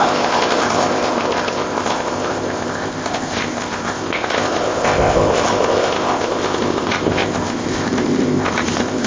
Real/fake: fake